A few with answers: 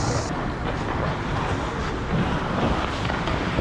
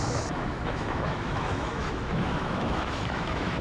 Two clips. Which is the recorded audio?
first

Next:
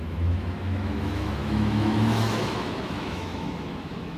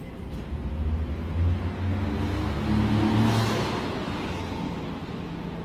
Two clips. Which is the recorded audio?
second